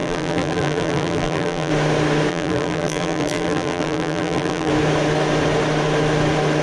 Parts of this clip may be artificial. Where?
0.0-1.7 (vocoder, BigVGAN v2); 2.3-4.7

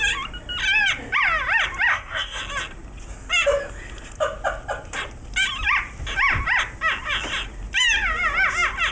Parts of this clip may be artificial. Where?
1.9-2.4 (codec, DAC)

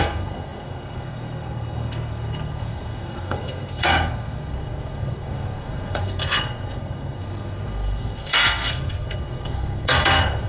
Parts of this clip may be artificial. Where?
0.0-10.5 (codec, SNAC)

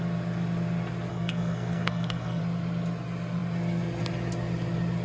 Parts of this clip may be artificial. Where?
1.1-2.4 (codec, SNAC)

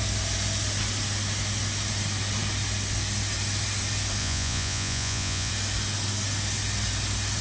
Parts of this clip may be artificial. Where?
4.2-5.5 (vocoder, Vocos)

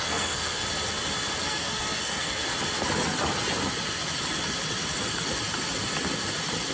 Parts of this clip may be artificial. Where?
0.0-0.6 (codec, SNAC); 1.4-2.4

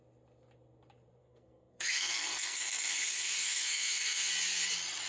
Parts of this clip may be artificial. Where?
1.2-4.3 (codec, SNAC)